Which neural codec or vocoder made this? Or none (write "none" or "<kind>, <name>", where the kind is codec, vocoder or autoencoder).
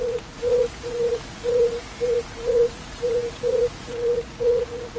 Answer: vocoder, Vocos